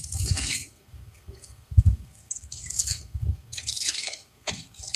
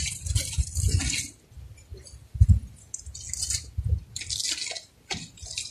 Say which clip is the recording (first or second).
second